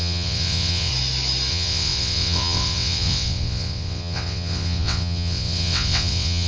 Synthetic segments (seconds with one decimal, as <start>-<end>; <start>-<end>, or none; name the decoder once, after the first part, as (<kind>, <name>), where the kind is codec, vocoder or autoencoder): 0.0-0.9 (vocoder, WaveNeXt); 1.5-6.5